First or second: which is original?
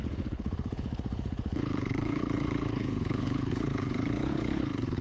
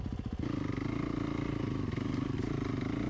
second